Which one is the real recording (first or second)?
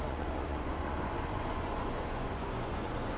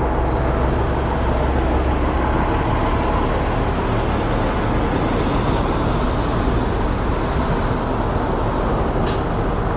second